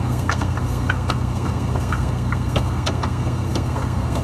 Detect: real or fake fake